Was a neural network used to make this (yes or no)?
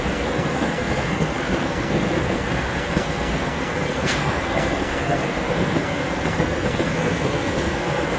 yes